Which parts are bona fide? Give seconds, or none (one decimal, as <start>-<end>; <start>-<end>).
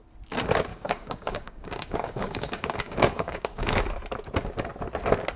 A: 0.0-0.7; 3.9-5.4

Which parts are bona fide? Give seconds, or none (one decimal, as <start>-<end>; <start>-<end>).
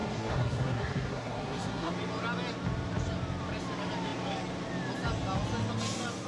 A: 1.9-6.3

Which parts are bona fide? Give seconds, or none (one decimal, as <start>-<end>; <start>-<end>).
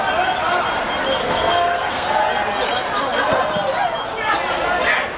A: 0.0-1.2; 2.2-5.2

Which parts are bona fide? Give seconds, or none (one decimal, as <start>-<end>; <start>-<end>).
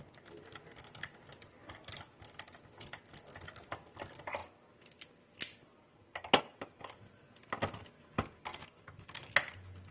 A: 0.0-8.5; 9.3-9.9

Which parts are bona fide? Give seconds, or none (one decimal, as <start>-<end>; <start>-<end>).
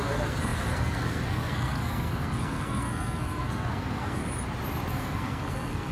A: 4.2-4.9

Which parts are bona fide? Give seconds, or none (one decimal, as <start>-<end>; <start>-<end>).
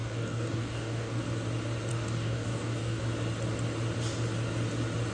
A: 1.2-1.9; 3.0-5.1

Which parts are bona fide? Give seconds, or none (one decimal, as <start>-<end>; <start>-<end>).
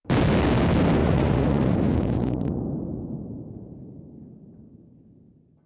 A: 0.0-1.0; 2.6-5.7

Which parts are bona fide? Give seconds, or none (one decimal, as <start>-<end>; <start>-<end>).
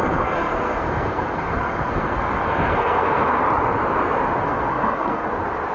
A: 3.4-4.4; 5.3-5.7